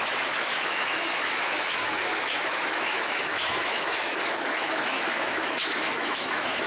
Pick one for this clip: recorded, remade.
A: remade